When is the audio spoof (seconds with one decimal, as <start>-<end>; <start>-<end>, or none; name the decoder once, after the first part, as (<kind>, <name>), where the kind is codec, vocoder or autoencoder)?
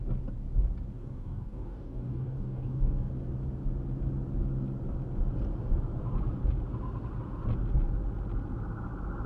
1.0-3.1 (codec, DAC)